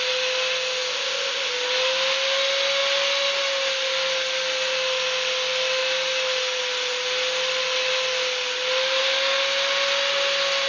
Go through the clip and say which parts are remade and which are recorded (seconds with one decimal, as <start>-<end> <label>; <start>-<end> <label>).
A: 0.0-0.9 recorded; 0.9-1.5 remade; 1.5-10.7 recorded